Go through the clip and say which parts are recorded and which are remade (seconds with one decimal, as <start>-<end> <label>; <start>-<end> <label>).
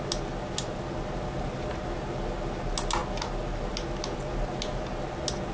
0.0-5.5 recorded